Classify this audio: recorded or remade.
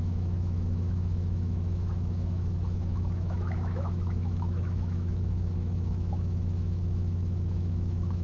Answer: remade